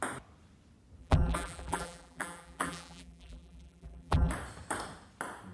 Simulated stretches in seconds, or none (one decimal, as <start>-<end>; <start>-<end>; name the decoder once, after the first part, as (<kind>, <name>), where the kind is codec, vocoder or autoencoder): 1.0-4.3 (vocoder, BigVGAN v2)